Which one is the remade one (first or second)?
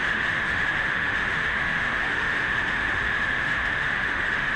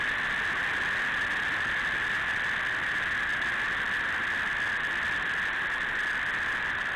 first